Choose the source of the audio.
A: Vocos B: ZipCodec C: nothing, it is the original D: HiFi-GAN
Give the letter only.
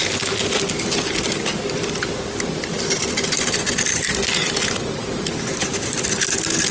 C